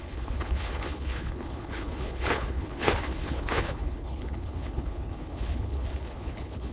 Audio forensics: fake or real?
fake